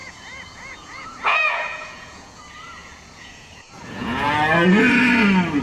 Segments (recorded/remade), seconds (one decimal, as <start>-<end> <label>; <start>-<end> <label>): 0.0-2.4 remade; 2.4-2.8 recorded; 2.8-4.3 remade; 4.3-5.6 recorded